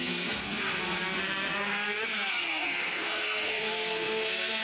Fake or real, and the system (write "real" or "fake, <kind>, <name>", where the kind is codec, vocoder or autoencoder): fake, codec, SNAC